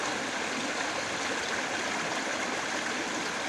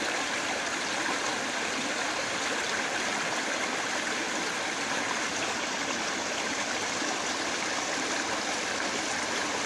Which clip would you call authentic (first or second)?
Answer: first